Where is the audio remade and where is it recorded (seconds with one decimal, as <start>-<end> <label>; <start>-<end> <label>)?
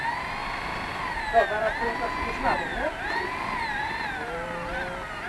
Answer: 0.0-0.4 recorded; 0.4-1.2 remade; 1.2-2.7 recorded; 2.7-4.1 remade; 4.1-5.3 recorded